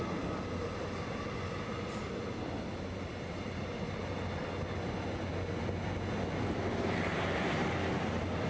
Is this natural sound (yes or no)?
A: yes